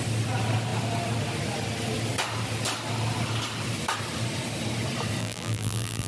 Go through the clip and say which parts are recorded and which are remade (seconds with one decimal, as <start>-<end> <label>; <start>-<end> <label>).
0.0-5.2 recorded; 5.2-6.1 remade